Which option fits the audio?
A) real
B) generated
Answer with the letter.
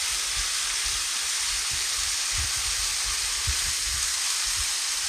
A